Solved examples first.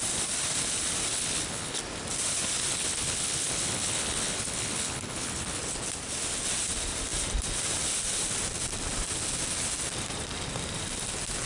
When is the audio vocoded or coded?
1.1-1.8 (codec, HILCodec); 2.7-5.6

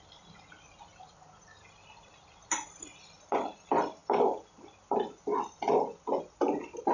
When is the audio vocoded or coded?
none

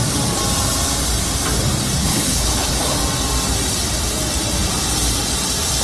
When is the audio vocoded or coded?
2.0-3.0 (codec, HILCodec)